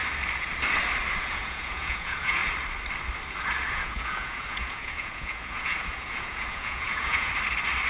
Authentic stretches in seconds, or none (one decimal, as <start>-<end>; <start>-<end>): 0.0-1.2; 2.4-3.7; 7.3-7.9